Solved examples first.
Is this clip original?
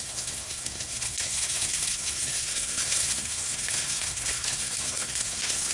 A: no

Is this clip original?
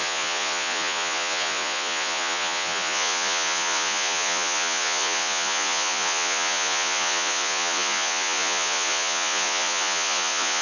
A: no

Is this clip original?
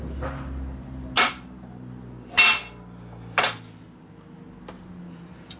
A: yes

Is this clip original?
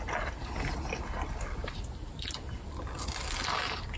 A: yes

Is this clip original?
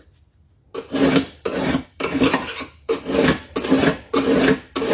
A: yes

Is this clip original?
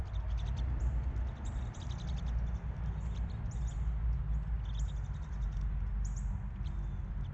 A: yes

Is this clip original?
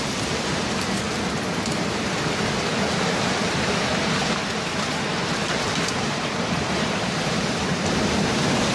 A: no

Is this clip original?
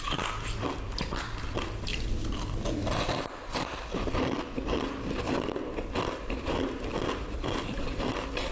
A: yes